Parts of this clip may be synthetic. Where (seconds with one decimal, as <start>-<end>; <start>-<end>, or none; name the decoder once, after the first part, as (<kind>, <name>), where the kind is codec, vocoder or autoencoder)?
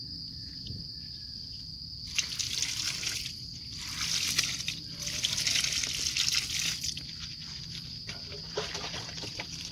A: 7.3-9.7 (vocoder, BigVGAN v2)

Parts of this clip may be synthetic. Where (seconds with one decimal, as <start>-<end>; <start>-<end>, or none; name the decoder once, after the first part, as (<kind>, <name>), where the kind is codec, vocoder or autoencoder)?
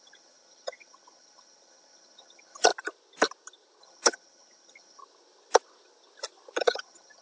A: 0.0-2.7 (vocoder, HiFi-GAN); 3.8-5.0; 6.6-7.2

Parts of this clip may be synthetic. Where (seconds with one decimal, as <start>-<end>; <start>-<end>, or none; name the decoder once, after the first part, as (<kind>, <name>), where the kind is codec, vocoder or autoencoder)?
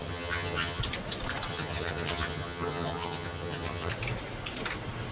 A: 0.0-0.8 (vocoder, HiFi-GAN); 1.5-3.9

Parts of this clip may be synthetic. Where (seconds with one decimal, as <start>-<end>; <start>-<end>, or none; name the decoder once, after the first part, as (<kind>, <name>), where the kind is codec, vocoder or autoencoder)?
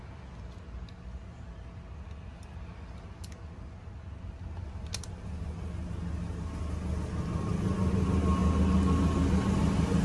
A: none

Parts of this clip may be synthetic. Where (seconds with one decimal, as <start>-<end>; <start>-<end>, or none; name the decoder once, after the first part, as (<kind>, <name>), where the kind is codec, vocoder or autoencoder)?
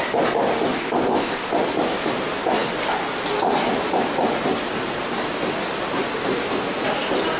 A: 0.8-1.5 (codec, ZipCodec)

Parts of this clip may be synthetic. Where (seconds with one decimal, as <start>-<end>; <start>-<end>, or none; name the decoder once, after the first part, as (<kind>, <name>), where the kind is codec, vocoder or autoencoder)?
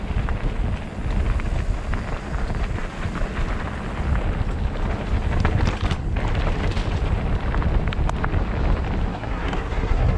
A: 9.1-10.2 (codec, SNAC)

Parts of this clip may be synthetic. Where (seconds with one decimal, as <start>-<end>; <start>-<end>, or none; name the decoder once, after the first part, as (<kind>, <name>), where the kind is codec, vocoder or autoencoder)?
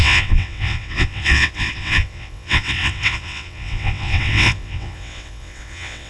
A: 0.0-6.1 (vocoder, WaveNeXt)